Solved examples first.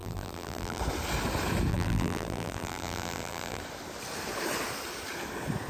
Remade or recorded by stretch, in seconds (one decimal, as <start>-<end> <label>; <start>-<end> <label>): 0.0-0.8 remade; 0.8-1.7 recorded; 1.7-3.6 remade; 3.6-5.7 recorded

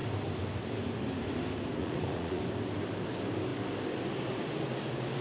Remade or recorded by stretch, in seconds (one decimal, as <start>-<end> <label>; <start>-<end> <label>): 0.0-1.8 recorded; 1.8-2.4 remade; 2.4-5.2 recorded

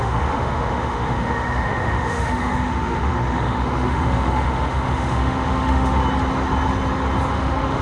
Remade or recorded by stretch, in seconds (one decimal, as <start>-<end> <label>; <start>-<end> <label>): 0.0-6.0 remade; 6.0-7.3 recorded; 7.3-7.8 remade

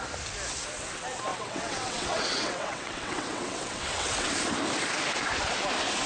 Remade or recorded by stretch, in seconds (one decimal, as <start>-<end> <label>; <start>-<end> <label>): 0.0-1.3 recorded; 1.3-4.3 remade; 4.3-6.1 recorded

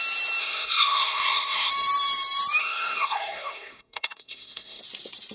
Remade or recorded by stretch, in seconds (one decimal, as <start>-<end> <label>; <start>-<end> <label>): 0.0-0.4 recorded; 0.4-1.7 remade; 1.7-2.6 recorded; 2.6-4.8 remade; 4.8-5.3 recorded